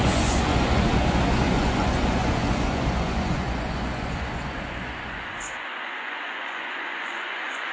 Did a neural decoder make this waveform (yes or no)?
yes